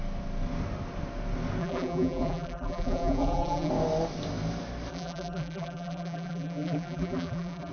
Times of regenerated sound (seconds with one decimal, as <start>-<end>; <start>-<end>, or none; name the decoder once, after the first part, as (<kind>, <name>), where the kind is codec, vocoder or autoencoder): 1.6-3.7 (vocoder, BigVGAN v2); 4.9-7.7